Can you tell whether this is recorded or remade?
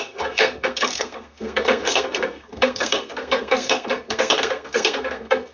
remade